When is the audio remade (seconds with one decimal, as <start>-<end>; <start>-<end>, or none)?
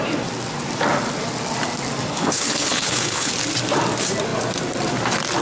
2.1-3.3